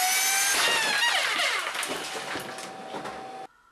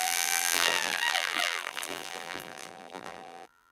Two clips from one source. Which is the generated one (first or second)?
second